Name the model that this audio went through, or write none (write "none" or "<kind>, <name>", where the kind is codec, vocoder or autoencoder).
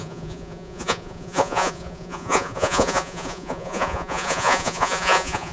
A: vocoder, Vocos